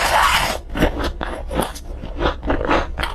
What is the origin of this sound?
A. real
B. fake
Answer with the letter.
A